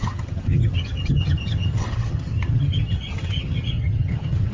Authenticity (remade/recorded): remade